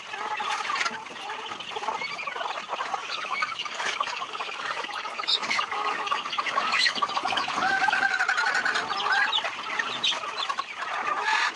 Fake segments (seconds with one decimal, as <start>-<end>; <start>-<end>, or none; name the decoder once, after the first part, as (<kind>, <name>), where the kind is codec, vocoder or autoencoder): 3.0-8.2 (codec, DAC)